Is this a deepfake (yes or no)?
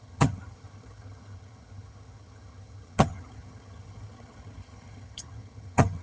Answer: yes